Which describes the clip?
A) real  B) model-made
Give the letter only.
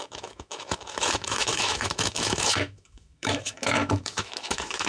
B